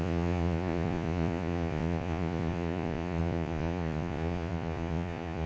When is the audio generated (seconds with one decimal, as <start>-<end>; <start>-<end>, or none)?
0.0-5.5